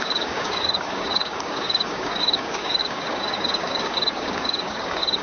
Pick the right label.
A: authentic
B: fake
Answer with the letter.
B